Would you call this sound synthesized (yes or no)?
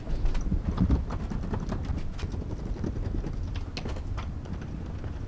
no